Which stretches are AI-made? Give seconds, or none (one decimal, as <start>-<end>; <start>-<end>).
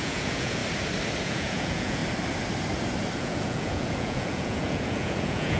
0.0-0.6; 1.2-2.0; 3.2-5.6